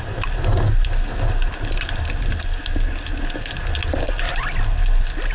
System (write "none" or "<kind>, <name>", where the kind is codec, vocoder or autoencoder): none